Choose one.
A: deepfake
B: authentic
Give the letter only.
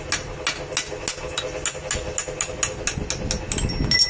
B